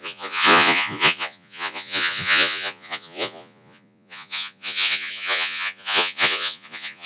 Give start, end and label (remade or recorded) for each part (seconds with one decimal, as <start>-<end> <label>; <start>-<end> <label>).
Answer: 0.0-7.1 remade